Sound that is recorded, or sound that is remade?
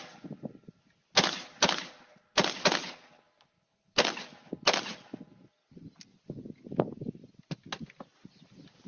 recorded